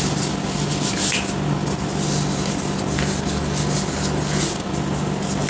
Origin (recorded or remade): recorded